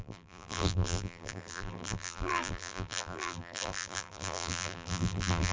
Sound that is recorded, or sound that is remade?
remade